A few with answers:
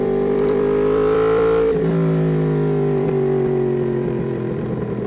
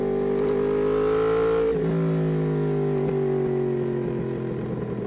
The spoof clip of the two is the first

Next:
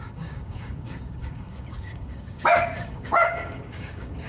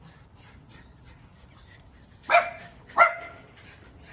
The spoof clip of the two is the first